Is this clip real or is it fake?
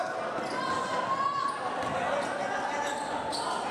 real